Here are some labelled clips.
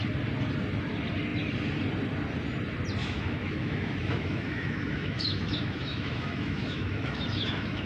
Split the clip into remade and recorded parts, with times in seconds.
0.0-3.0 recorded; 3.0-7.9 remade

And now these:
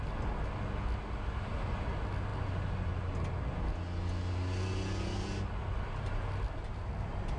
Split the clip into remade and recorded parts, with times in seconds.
0.0-7.4 recorded

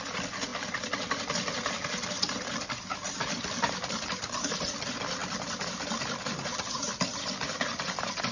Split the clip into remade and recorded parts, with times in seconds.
0.0-8.3 recorded

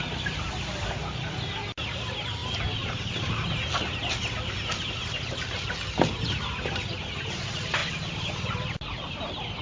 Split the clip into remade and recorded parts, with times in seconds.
0.0-9.6 recorded

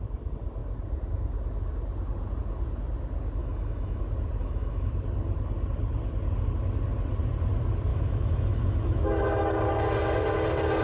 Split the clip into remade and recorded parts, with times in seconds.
0.0-3.4 recorded; 3.4-4.0 remade; 4.0-4.4 recorded; 4.4-4.9 remade; 4.9-7.9 recorded; 7.9-9.6 remade; 9.6-10.8 recorded

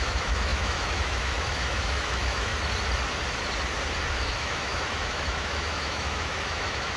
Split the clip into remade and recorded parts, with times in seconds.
0.0-2.5 remade; 2.5-4.1 recorded; 4.1-7.0 remade

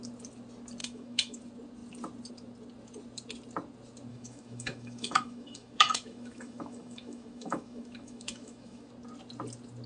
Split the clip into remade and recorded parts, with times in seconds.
0.0-0.8 recorded; 0.8-1.4 remade; 1.4-4.1 recorded; 4.1-8.9 remade; 8.9-9.9 recorded

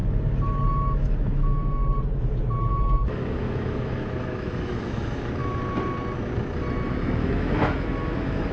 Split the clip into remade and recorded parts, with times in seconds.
0.0-0.7 recorded; 0.7-1.8 remade; 1.8-2.7 recorded; 2.7-5.4 remade; 5.4-6.9 recorded; 6.9-8.5 remade